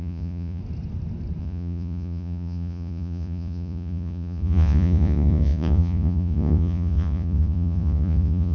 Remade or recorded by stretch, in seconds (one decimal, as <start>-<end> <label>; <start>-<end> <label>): 0.0-0.6 remade; 0.6-1.4 recorded; 1.4-8.5 remade